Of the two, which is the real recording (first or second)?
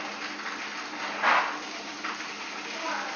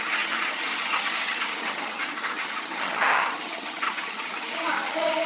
first